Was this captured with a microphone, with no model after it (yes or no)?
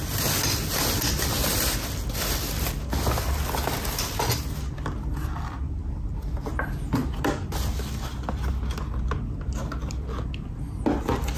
yes